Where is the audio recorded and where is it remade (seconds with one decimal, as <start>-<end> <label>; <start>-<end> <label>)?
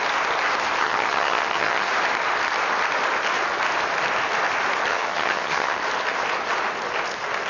0.0-0.8 recorded; 0.8-1.9 remade; 1.9-4.9 recorded; 4.9-5.8 remade; 5.8-7.5 recorded